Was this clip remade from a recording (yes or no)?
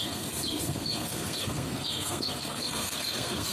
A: yes